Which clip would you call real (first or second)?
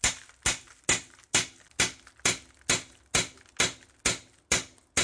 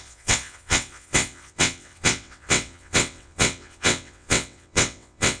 first